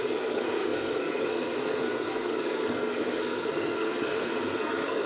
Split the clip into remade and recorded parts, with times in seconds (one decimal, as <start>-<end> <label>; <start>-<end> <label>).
0.0-5.1 remade